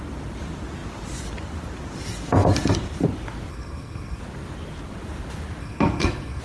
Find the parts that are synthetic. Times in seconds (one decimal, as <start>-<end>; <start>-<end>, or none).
3.5-4.2; 5.6-6.4